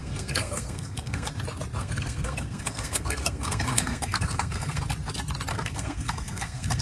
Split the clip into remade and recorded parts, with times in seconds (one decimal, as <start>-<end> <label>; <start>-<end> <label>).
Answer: 0.0-1.3 remade; 1.3-1.8 recorded; 1.8-4.8 remade; 4.8-5.5 recorded; 5.5-6.8 remade